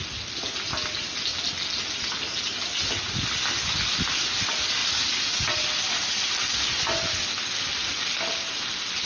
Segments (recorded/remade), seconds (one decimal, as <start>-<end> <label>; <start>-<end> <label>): 0.0-9.1 recorded